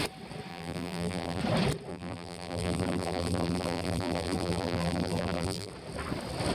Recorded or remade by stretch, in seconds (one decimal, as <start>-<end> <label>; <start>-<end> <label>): 0.0-0.5 recorded; 0.5-1.4 remade; 1.4-1.9 recorded; 1.9-5.7 remade; 5.7-6.5 recorded